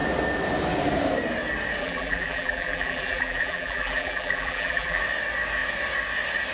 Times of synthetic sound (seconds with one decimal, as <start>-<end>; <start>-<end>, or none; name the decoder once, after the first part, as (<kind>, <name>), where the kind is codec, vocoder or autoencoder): 1.8-5.0 (vocoder, BigVGAN v2)